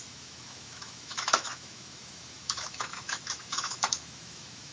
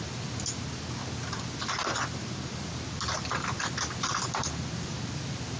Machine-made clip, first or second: first